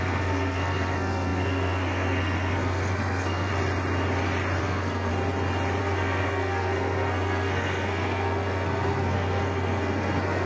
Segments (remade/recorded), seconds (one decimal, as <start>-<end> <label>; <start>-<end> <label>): 0.0-3.5 remade; 3.5-4.6 recorded; 4.6-5.1 remade; 5.1-5.8 recorded; 5.8-10.5 remade